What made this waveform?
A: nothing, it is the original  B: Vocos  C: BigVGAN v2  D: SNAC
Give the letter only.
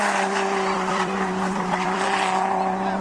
C